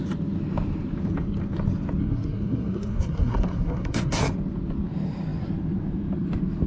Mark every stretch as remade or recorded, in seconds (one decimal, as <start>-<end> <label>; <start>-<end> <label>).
0.0-2.0 recorded; 2.0-4.2 remade; 4.2-6.7 recorded